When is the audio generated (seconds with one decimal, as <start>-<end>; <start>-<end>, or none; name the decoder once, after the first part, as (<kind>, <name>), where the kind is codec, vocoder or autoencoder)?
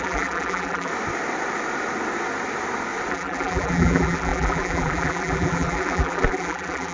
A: 0.0-0.9 (vocoder, BigVGAN v2); 3.1-6.9